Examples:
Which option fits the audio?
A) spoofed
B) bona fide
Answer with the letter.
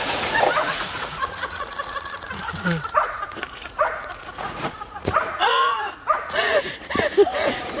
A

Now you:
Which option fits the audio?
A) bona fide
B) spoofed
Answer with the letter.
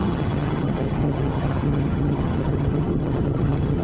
B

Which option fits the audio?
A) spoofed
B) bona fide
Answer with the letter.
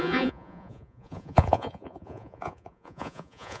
A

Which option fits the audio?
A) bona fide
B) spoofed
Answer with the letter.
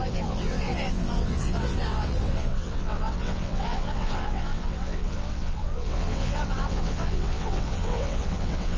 B